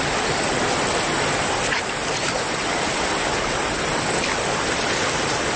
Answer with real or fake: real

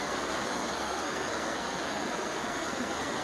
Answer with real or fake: fake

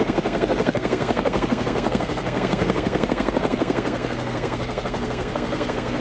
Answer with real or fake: fake